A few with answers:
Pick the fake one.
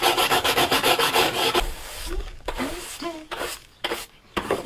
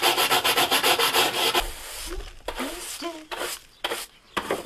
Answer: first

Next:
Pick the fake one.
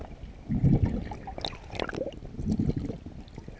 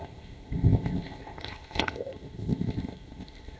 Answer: second